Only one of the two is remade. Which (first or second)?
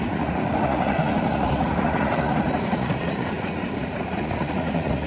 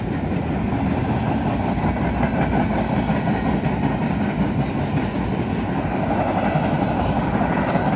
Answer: first